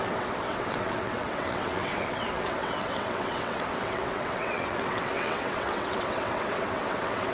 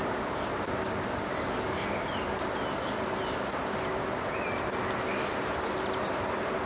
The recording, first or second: second